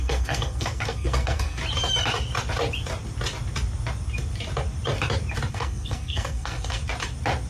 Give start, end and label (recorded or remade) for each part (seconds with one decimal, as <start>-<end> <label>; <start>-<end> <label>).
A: 0.0-1.6 remade; 1.6-5.5 recorded; 5.5-6.8 remade; 6.8-7.5 recorded